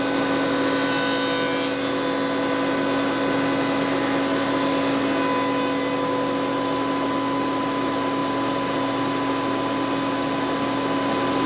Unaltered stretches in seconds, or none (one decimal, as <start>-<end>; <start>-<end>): 0.0-11.5